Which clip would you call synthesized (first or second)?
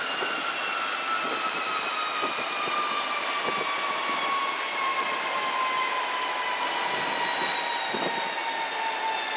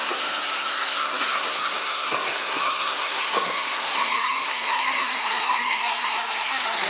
second